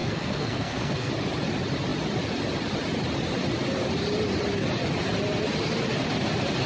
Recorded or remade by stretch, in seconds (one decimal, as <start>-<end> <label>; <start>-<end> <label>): 0.0-1.1 remade; 1.1-6.7 recorded